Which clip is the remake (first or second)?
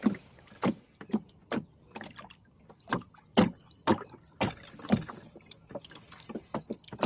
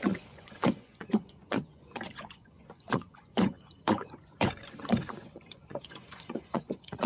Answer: second